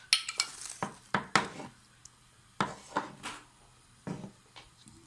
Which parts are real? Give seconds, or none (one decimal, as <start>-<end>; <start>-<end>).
0.0-5.1